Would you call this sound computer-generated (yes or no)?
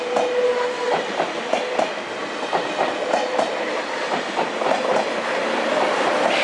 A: no